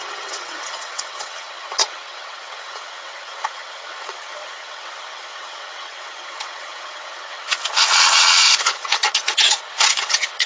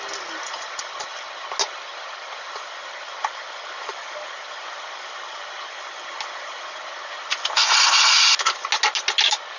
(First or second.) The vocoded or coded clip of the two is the first